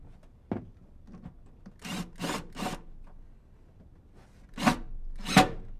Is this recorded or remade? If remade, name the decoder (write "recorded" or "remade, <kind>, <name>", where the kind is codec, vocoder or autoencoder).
recorded